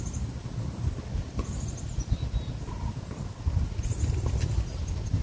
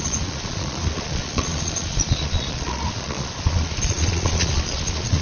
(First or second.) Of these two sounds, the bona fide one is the first